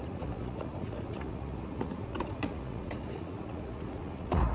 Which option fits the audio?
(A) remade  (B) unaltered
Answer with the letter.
A